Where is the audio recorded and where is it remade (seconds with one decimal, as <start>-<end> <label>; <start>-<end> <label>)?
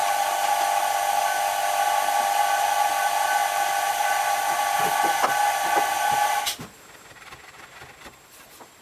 0.0-8.8 recorded